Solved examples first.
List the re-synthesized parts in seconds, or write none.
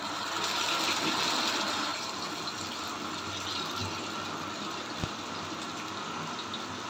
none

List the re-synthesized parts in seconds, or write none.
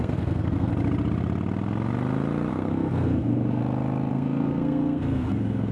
0.0-0.7 (codec, SNAC); 2.5-3.6; 4.1-5.7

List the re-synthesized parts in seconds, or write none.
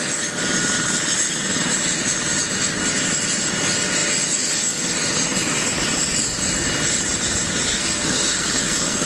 7.7-9.1 (codec, SNAC)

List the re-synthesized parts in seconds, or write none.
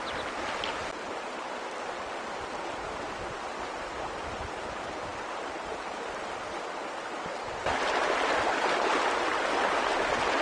none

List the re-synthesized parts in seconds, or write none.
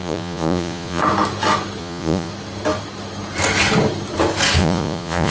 0.0-1.0 (vocoder, Vocos); 1.8-2.3; 4.6-5.3